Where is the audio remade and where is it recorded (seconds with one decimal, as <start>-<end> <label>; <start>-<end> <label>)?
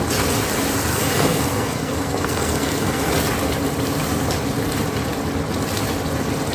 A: 0.0-0.9 recorded; 0.9-3.1 remade; 3.1-6.5 recorded